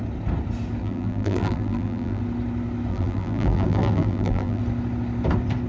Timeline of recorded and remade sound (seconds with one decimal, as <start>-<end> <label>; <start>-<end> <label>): 0.0-0.8 recorded; 0.8-2.2 remade; 2.2-2.9 recorded; 2.9-4.6 remade; 4.6-5.7 recorded